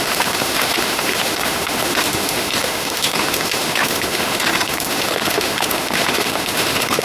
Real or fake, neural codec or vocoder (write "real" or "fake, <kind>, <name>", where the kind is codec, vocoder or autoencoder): fake, autoencoder, DAC-VAE